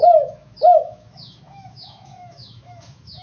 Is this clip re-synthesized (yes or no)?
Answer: yes